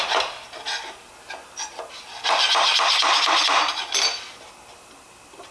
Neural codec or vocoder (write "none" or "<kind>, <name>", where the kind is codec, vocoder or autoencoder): none